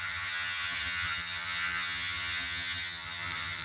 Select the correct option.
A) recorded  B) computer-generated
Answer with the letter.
B